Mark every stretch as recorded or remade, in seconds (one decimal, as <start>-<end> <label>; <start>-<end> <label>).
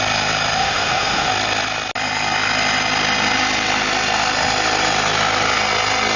0.0-0.6 recorded; 0.6-1.3 remade; 1.3-6.2 recorded